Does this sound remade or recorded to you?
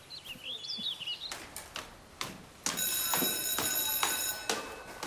recorded